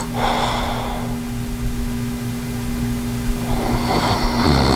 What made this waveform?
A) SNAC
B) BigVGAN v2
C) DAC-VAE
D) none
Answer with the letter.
D